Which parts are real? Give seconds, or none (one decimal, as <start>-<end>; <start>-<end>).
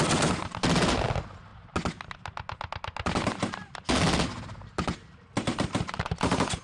0.0-5.5